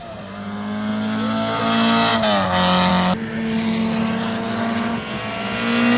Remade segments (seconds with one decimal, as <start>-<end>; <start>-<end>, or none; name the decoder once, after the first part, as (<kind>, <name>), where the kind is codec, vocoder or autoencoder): none